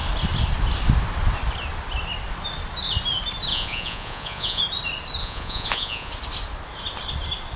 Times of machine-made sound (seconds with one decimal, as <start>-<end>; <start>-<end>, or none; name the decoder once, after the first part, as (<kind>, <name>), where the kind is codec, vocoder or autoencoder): 3.5-4.6 (vocoder, Vocos); 5.2-6.1